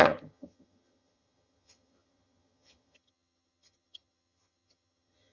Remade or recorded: remade